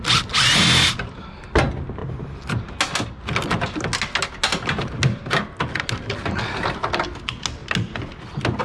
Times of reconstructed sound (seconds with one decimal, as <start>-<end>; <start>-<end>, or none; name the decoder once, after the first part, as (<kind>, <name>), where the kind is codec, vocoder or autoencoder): none